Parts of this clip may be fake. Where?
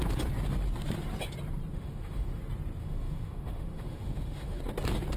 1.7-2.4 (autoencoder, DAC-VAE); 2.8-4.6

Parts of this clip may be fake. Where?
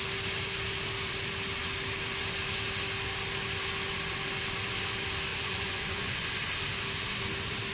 5.3-6.5 (vocoder, Vocos)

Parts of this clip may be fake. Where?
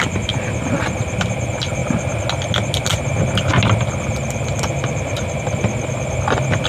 none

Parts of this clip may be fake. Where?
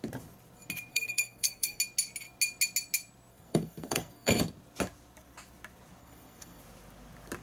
0.9-1.8 (codec, SNAC); 3.3-4.4; 6.0-6.6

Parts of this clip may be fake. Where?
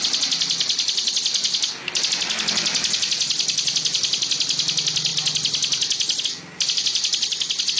none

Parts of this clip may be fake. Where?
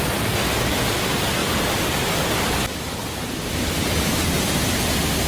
0.0-3.0 (vocoder, BigVGAN v2); 4.1-5.3